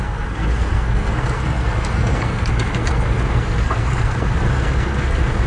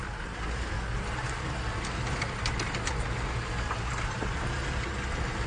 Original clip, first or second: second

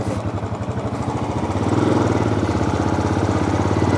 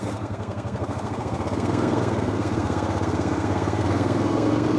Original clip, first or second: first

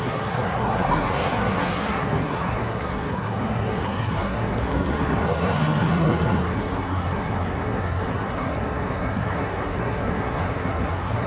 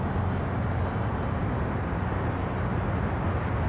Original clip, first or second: second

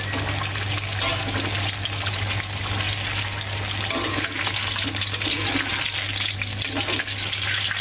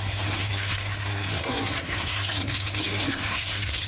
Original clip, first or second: first